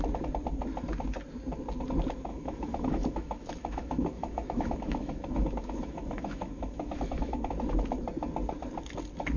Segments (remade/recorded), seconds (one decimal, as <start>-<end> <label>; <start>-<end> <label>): 0.0-2.3 recorded; 2.3-7.5 remade; 7.5-9.4 recorded